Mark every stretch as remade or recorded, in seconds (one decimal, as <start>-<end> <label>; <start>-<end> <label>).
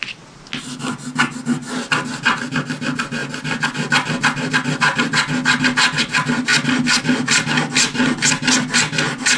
0.0-9.4 recorded